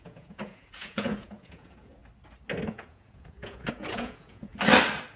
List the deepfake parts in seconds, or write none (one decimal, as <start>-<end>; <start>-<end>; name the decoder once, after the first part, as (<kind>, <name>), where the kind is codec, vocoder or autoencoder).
0.0-2.0 (vocoder, Vocos); 2.7-4.5